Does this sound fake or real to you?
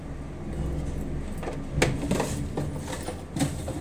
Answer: real